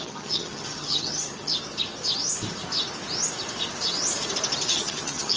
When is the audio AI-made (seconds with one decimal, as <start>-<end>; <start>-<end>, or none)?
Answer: 0.0-1.5; 4.7-5.4